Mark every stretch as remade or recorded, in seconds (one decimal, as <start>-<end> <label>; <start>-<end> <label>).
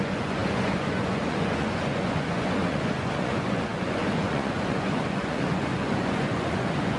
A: 0.0-7.0 remade